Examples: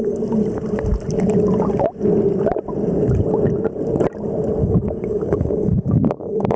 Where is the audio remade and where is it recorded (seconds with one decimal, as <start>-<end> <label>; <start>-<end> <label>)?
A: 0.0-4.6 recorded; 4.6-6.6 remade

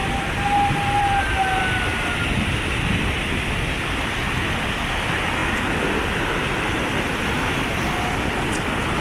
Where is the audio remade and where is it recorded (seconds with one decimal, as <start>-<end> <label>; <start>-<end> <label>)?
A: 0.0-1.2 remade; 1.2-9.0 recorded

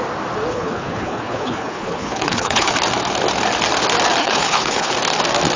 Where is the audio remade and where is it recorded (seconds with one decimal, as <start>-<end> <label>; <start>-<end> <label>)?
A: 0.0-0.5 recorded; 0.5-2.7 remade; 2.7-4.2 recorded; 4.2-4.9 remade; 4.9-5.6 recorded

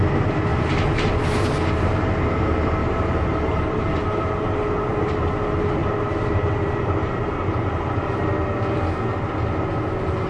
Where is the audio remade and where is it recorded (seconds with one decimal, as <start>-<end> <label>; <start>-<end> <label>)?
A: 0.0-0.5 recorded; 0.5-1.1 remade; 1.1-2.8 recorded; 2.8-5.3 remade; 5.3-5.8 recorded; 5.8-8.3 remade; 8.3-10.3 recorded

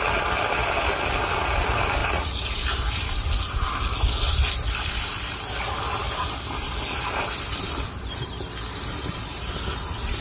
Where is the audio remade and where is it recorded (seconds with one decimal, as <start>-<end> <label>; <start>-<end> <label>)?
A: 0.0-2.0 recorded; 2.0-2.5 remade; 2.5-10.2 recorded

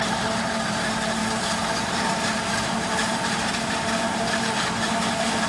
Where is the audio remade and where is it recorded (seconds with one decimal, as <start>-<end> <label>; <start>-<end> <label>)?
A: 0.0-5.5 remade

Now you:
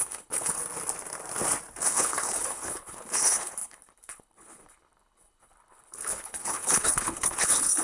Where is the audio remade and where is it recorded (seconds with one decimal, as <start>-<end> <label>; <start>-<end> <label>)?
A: 0.0-0.6 remade; 0.6-1.8 recorded; 1.8-7.8 remade

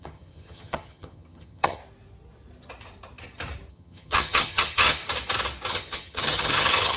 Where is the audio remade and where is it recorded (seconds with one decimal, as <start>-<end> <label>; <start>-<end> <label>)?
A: 0.0-1.8 remade; 1.8-3.7 recorded; 3.7-5.0 remade; 5.0-5.7 recorded; 5.7-7.0 remade